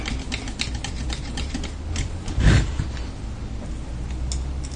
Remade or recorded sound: recorded